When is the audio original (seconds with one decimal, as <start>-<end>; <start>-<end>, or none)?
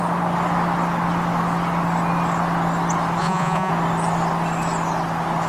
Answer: 0.0-3.2; 3.7-5.5